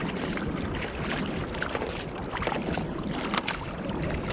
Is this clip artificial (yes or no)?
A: no